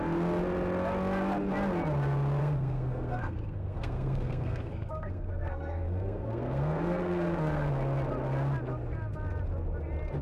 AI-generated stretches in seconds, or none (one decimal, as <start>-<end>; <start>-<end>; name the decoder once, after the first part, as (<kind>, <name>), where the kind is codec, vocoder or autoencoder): 2.4-7.7 (codec, SNAC)